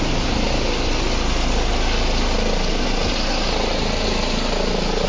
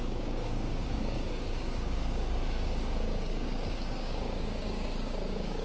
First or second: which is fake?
second